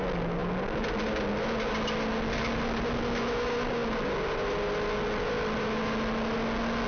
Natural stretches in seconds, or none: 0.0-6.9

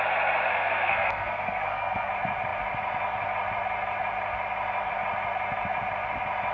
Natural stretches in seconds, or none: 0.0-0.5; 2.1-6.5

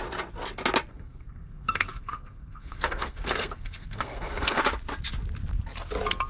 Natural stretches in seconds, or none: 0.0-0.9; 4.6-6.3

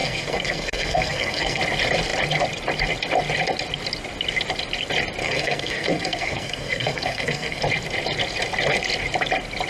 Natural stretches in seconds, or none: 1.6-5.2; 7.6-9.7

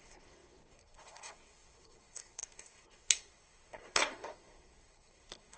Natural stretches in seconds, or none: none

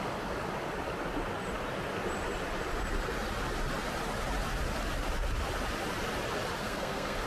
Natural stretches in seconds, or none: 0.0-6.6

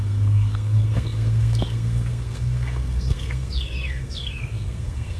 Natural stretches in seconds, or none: none

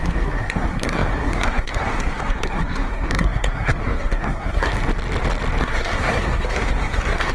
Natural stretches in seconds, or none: 4.7-5.6